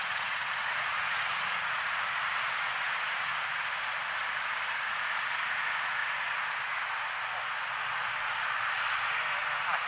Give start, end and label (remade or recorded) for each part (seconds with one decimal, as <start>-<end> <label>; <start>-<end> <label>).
0.0-3.3 remade; 3.3-4.7 recorded; 4.7-6.0 remade; 6.0-9.9 recorded